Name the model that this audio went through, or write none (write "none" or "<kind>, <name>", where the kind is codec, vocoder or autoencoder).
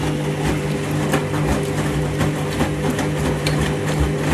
none